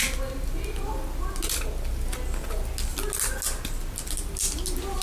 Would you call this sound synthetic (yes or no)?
no